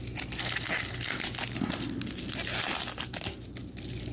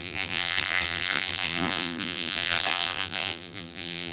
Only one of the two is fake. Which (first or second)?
second